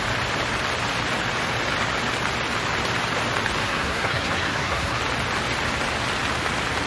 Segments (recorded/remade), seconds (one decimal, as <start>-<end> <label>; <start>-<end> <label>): 0.0-3.6 recorded; 3.6-5.0 remade; 5.0-6.9 recorded